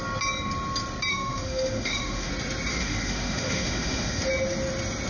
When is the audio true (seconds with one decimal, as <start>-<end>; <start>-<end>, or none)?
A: 0.0-1.1; 2.3-2.7; 4.2-5.1